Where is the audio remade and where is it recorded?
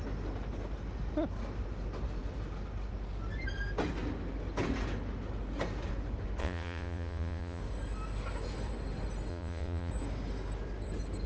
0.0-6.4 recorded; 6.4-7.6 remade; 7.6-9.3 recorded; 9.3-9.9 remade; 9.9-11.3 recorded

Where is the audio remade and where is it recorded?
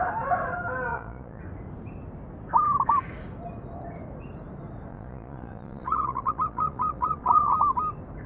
0.0-0.9 recorded; 0.9-1.4 remade; 1.4-4.9 recorded; 4.9-7.5 remade; 7.5-8.3 recorded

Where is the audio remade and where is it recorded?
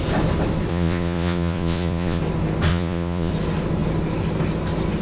0.0-0.7 recorded; 0.7-2.2 remade; 2.2-2.7 recorded; 2.7-3.3 remade; 3.3-5.0 recorded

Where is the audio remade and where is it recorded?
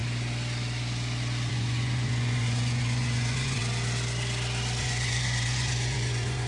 0.0-1.5 recorded; 1.5-3.6 remade; 3.6-4.8 recorded; 4.8-6.5 remade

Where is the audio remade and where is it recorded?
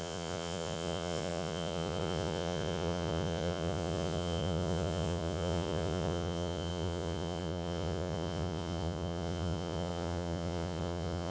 0.0-11.3 remade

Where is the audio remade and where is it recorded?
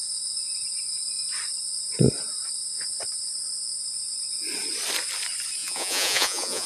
0.0-5.6 recorded; 5.6-6.7 remade